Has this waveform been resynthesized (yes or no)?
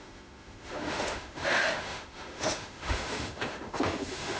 yes